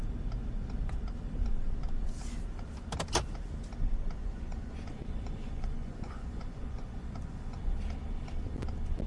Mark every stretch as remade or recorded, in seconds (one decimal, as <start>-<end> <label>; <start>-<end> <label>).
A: 0.0-4.2 recorded; 4.2-7.7 remade; 7.7-9.1 recorded